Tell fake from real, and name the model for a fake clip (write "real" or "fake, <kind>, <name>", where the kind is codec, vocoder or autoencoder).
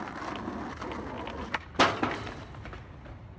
real